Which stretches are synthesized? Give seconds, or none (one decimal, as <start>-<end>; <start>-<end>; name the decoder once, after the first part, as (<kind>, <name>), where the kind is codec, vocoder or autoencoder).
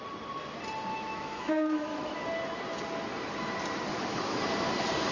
0.9-2.3 (autoencoder, DAC-VAE); 3.9-4.4